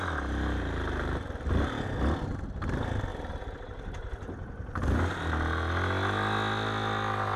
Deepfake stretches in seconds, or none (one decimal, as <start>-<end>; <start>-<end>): 3.1-5.2